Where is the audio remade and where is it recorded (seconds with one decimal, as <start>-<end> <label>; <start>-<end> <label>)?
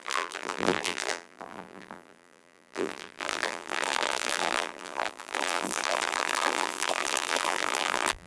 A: 0.0-8.3 remade